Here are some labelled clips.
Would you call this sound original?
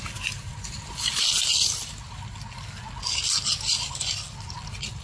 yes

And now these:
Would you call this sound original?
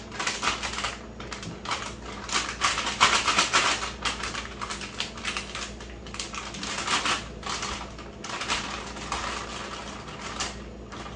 yes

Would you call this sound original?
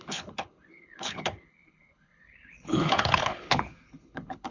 no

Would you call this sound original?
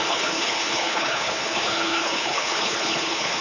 no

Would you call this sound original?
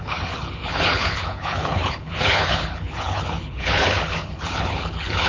no